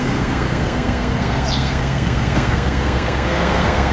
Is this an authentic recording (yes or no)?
no